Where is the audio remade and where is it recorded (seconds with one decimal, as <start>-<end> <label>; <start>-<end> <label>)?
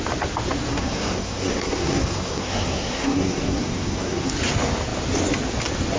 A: 0.0-0.7 recorded; 0.7-4.3 remade; 4.3-6.0 recorded